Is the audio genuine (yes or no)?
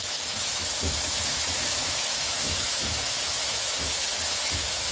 no